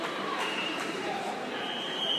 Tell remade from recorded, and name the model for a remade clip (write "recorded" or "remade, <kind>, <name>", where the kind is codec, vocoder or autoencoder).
remade, vocoder, BigVGAN v2